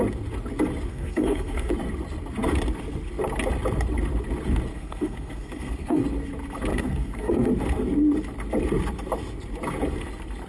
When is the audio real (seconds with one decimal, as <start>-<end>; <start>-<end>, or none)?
0.0-0.9; 1.7-4.7; 6.0-6.7; 7.5-10.5